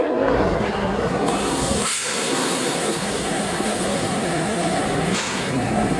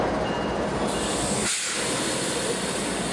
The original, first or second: second